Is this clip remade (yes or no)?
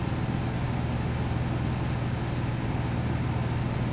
no